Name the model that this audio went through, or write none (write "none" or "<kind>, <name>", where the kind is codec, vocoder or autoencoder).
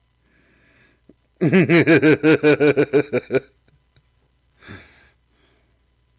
none